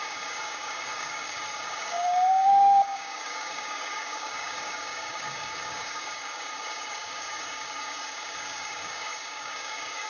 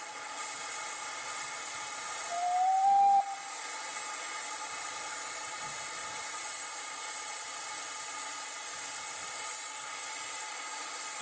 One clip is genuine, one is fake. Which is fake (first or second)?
first